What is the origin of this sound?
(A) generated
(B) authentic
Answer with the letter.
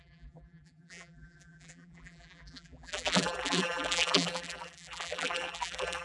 A